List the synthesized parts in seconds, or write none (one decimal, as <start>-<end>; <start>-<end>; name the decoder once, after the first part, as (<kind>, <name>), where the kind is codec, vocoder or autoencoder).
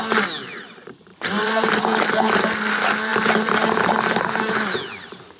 1.1-1.8 (vocoder, BigVGAN v2)